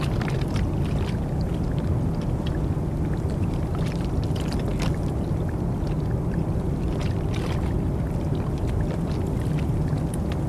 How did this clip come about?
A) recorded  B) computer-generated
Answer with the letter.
A